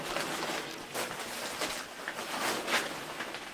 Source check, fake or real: real